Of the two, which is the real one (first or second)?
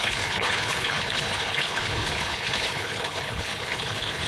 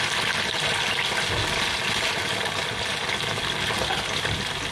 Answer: second